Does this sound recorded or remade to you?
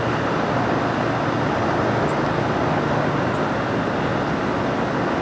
recorded